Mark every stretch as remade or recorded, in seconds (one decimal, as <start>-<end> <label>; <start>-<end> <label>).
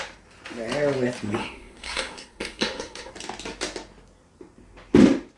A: 0.0-1.4 recorded; 1.4-3.1 remade; 3.1-5.4 recorded